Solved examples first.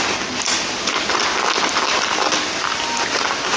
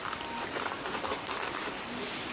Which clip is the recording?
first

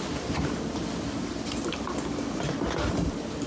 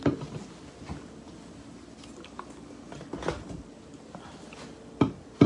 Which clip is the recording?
second